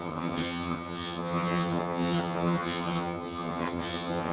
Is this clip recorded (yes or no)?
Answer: no